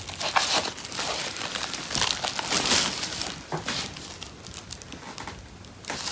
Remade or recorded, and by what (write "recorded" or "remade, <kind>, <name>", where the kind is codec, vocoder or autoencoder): recorded